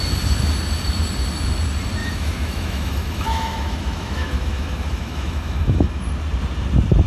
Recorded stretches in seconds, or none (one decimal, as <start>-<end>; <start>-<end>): 0.0-2.0; 6.0-7.1